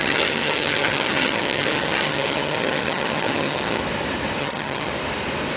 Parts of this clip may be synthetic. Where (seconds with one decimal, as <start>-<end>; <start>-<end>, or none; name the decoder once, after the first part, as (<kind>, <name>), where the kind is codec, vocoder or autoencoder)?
0.0-3.8 (vocoder, HiFi-GAN); 4.4-4.9